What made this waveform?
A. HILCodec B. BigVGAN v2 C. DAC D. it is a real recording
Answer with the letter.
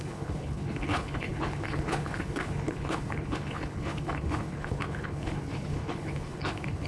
A